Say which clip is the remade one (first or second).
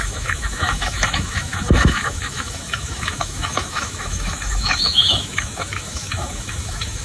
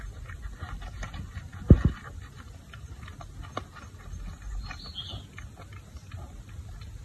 first